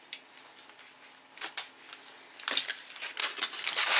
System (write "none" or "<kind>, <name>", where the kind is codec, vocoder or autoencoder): none